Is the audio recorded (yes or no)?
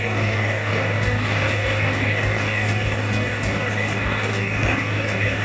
no